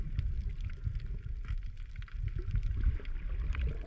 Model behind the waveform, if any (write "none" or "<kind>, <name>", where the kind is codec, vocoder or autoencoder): none